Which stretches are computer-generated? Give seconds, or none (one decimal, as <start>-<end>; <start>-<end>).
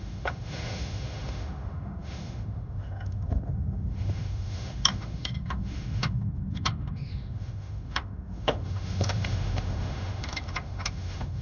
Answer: 0.0-11.4